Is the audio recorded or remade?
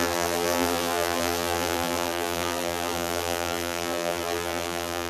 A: remade